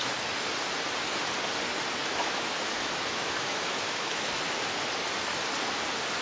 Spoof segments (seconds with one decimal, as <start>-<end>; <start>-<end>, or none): 2.0-4.4